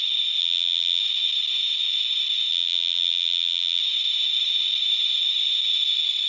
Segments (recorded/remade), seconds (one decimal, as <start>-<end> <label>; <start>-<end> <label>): 0.0-0.4 recorded; 0.4-1.0 remade; 1.0-2.5 recorded; 2.5-3.8 remade; 3.8-6.3 recorded

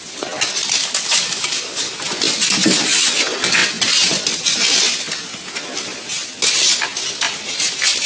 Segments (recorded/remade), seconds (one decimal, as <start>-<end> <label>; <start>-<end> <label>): 0.0-0.8 recorded; 0.8-1.9 remade; 1.9-8.1 recorded

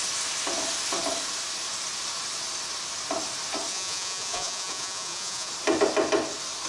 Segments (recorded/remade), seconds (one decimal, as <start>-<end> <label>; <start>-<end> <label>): 0.0-3.7 recorded; 3.7-5.5 remade; 5.5-6.7 recorded

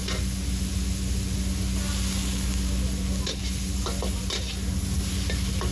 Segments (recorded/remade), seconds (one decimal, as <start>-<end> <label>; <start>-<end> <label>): 0.0-5.7 recorded

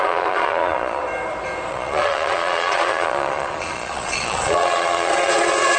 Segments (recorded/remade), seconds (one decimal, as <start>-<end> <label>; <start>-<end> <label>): 0.0-1.0 remade; 1.0-1.7 recorded; 1.7-5.8 remade

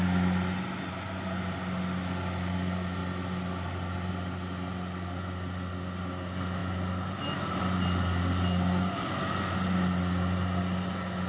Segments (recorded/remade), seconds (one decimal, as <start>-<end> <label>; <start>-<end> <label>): 0.0-11.3 recorded

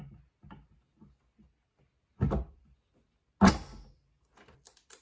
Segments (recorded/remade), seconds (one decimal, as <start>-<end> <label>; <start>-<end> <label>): 0.0-5.0 recorded

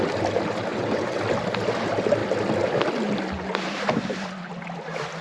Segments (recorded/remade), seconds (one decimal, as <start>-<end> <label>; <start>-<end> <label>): 0.0-0.7 recorded; 0.7-1.2 remade; 1.2-5.2 recorded